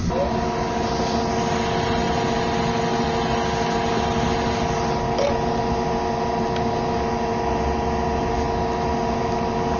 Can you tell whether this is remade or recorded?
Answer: recorded